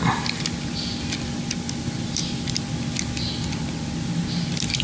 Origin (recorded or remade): recorded